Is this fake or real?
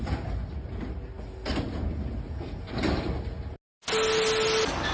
real